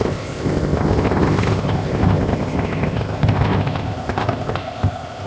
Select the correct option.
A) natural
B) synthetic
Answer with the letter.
B